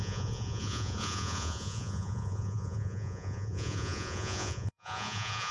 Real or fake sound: fake